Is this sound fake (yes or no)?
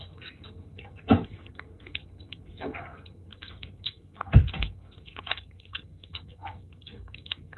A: yes